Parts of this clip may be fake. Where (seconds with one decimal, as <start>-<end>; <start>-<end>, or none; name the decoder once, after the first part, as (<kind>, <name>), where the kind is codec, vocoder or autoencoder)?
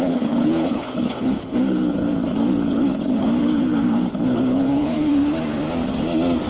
0.0-5.1 (codec, HILCodec)